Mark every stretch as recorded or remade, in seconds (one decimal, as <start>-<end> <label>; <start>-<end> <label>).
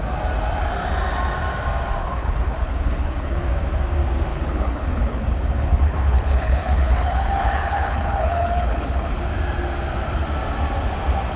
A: 0.0-2.0 recorded; 2.0-3.4 remade; 3.4-4.3 recorded; 4.3-9.2 remade; 9.2-11.4 recorded